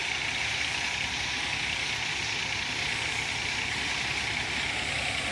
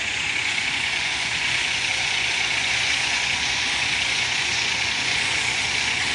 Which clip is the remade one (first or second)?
second